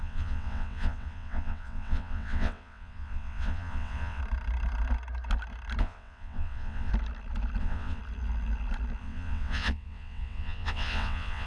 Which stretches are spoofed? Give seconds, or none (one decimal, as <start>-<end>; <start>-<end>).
0.0-4.2; 5.8-6.9; 7.6-8.0; 9.0-11.5